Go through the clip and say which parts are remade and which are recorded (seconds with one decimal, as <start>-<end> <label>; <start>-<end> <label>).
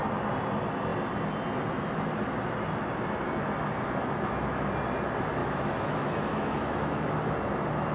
0.0-4.0 recorded; 4.0-4.7 remade; 4.7-5.4 recorded; 5.4-7.1 remade; 7.1-7.9 recorded